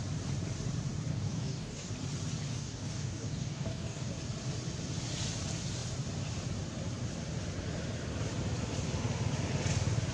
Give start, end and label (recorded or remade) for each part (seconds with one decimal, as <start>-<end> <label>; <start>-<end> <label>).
0.0-1.1 recorded; 1.1-1.9 remade; 1.9-2.5 recorded; 2.5-4.1 remade; 4.1-10.1 recorded